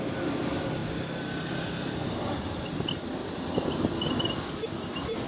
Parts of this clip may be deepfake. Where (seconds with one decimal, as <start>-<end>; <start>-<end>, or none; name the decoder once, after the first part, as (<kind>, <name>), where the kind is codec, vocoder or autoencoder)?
none